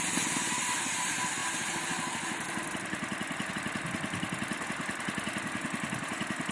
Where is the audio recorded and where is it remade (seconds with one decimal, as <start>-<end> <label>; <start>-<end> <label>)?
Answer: 0.0-6.5 recorded